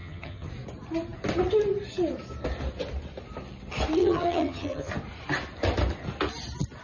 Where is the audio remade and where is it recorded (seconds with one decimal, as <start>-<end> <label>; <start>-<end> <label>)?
0.0-0.5 remade; 0.5-4.0 recorded; 4.0-4.9 remade; 4.9-6.8 recorded